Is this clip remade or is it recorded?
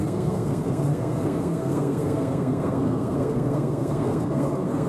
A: remade